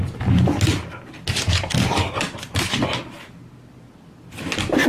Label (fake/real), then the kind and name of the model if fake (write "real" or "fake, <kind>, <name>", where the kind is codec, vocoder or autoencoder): real